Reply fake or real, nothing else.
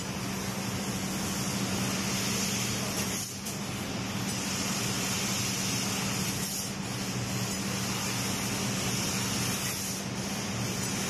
real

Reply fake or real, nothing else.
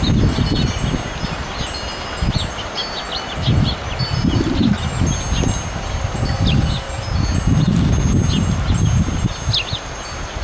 real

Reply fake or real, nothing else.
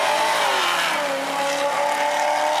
real